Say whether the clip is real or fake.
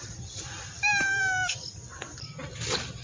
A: real